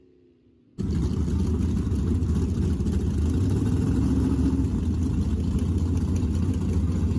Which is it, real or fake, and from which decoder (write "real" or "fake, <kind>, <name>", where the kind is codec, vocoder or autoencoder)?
real